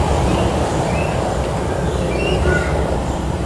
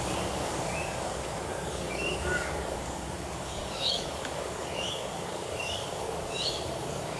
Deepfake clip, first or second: second